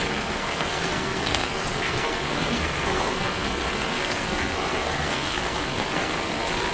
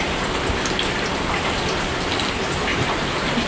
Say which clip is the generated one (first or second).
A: first